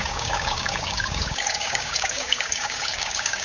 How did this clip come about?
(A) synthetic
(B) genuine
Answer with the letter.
A